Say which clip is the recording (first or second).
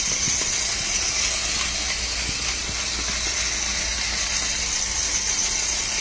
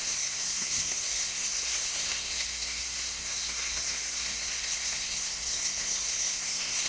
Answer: first